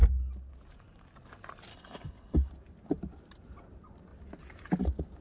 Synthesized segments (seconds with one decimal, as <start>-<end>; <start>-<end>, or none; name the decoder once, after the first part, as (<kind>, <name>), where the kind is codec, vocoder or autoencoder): 1.7-2.5 (codec, HILCodec)